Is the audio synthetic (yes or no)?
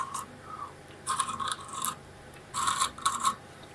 yes